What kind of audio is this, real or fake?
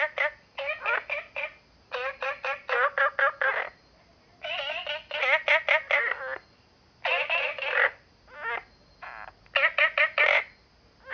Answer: real